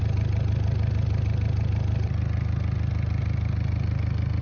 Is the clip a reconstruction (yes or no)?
no